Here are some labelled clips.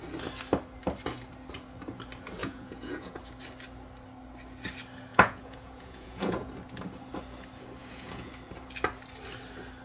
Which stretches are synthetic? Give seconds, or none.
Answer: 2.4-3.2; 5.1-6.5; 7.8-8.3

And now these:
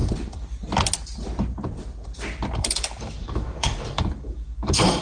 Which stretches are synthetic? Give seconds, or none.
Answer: 2.6-5.0

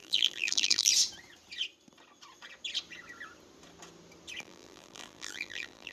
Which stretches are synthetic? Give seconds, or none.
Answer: 0.0-0.9; 4.4-5.9

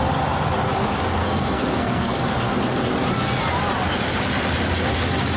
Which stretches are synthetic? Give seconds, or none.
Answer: 1.2-2.2